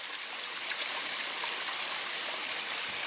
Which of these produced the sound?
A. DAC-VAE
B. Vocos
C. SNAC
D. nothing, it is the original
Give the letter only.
D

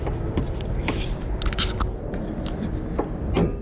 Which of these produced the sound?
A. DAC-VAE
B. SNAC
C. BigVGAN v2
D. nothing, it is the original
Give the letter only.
D